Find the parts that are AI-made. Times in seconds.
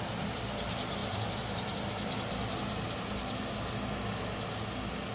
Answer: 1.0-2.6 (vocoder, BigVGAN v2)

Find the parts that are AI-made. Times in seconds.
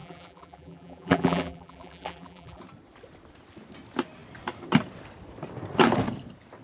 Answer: 0.0-2.6 (vocoder, BigVGAN v2)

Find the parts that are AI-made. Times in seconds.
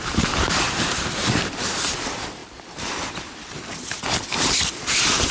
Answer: 0.0-2.4 (vocoder, BigVGAN v2)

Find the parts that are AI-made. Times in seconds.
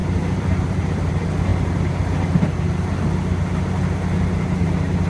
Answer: 0.0-1.1 (vocoder, BigVGAN v2)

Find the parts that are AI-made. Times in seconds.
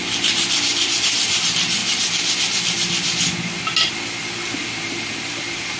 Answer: 0.0-1.8 (vocoder, BigVGAN v2); 3.9-5.8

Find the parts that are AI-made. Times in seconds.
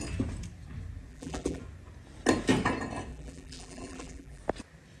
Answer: 1.1-1.6 (vocoder, BigVGAN v2); 3.1-4.4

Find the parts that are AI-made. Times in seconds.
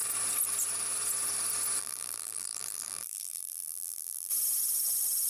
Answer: 1.8-4.3 (vocoder, BigVGAN v2)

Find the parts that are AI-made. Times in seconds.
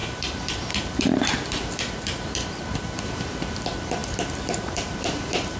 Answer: 0.0-5.6 (vocoder, BigVGAN v2)